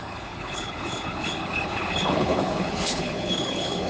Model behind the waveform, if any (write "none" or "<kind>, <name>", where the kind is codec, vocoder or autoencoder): codec, HILCodec